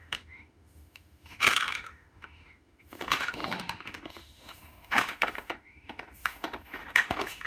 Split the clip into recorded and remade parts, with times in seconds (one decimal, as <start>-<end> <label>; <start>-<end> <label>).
0.0-7.5 remade